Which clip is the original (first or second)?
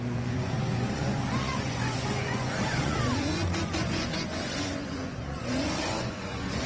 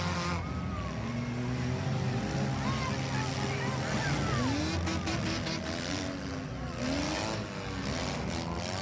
second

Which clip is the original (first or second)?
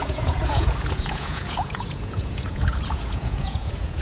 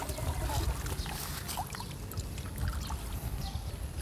second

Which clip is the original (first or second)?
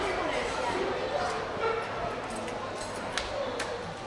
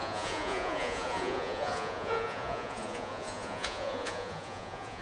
first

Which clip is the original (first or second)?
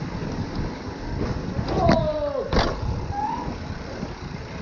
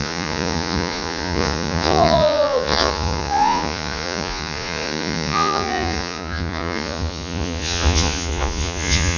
first